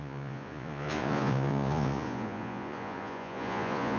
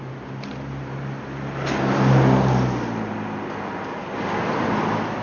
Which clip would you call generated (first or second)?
first